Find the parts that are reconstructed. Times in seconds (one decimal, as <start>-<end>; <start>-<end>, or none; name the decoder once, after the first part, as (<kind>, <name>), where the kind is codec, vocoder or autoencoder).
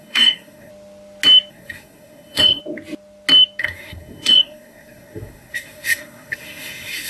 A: 0.0-0.7 (codec, SNAC); 1.5-2.6; 3.6-7.1